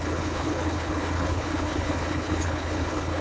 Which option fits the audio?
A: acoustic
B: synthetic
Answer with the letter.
B